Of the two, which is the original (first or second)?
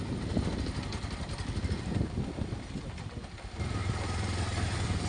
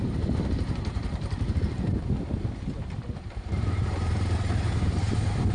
first